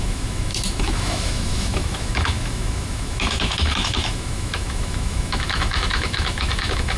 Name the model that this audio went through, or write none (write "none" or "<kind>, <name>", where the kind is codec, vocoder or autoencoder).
autoencoder, DAC-VAE